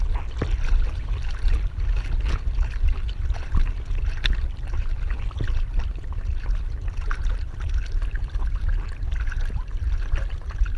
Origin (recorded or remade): recorded